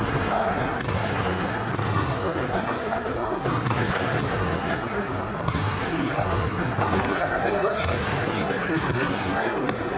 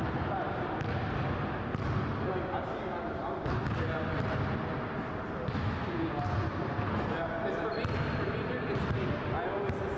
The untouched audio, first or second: second